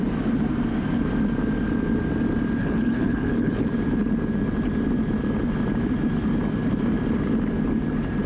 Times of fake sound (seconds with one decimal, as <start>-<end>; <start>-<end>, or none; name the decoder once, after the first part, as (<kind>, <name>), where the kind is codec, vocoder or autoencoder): 2.6-3.7 (codec, HILCodec)

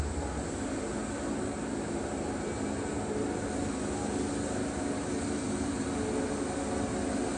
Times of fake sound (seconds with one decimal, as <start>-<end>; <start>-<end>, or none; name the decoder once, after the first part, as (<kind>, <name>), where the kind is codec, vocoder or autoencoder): none

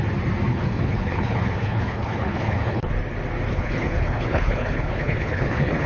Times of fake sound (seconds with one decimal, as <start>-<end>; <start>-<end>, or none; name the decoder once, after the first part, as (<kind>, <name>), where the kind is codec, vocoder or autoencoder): 0.5-2.9 (codec, HILCodec); 3.5-5.9

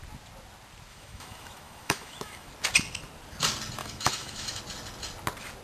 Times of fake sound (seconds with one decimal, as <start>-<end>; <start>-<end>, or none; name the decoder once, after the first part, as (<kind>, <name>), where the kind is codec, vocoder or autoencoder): 0.9-2.5 (autoencoder, DAC-VAE); 3.8-4.6

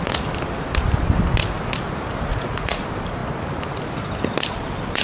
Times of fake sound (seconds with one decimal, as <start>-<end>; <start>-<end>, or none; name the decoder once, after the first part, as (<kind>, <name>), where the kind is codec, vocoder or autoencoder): 2.3-2.8 (vocoder, Vocos)

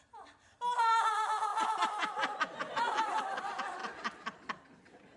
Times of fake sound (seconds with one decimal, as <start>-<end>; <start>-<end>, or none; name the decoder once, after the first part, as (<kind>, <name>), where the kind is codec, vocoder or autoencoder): none